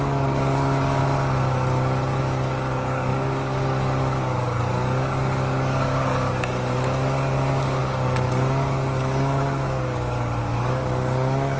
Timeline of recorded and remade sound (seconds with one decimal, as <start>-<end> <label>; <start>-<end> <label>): 0.0-1.0 remade; 1.0-2.2 recorded; 2.2-11.6 remade